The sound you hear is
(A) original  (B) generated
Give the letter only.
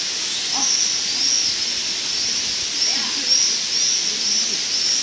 A